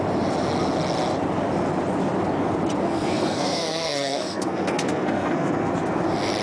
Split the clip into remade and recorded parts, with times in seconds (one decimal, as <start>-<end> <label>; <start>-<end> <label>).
0.0-2.8 recorded; 2.8-5.7 remade; 5.7-6.4 recorded